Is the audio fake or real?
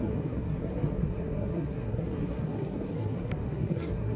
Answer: fake